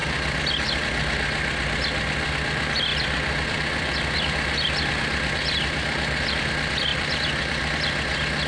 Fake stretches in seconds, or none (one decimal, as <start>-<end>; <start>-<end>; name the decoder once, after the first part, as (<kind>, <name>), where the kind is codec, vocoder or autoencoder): 0.0-0.8 (vocoder, BigVGAN v2); 2.9-6.5; 6.9-7.7